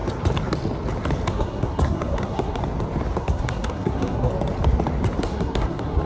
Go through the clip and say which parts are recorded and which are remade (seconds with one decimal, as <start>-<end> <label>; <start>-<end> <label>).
0.0-1.3 recorded; 1.3-2.6 remade; 2.6-3.2 recorded; 3.2-4.3 remade; 4.3-5.2 recorded; 5.2-6.1 remade